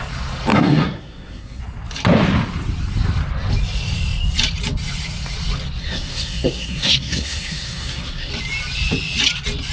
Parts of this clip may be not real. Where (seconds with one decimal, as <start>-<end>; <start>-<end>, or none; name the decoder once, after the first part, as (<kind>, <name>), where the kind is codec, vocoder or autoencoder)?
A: 0.5-1.6 (codec, SNAC); 5.8-8.3